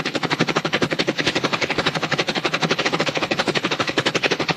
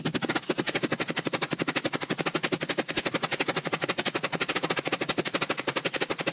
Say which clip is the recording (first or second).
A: second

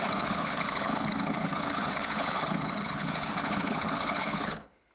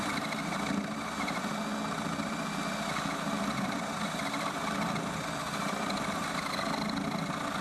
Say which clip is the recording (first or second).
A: second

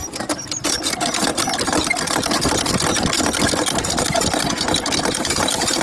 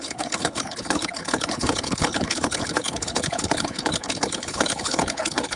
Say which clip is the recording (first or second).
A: first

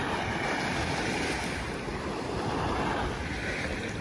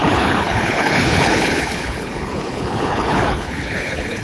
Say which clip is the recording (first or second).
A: first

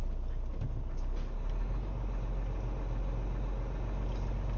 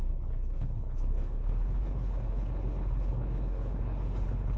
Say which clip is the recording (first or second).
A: first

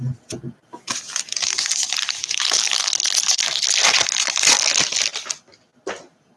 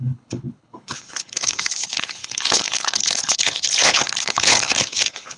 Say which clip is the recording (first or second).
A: first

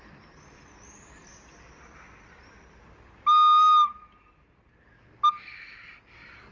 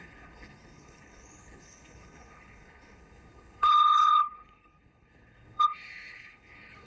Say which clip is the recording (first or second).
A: first